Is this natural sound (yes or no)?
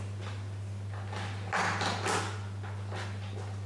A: yes